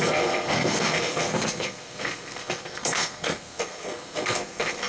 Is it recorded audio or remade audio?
remade